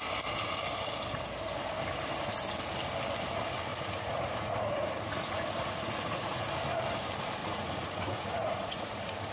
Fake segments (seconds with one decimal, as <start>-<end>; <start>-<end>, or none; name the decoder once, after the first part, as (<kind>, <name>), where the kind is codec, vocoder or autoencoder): 3.7-6.4 (vocoder, Vocos); 7.4-9.3